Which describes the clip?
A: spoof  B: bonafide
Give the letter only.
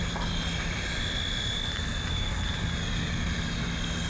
B